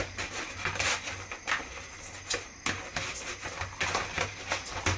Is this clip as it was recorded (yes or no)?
yes